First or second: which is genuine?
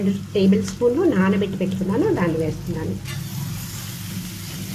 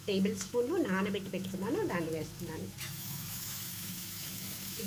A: first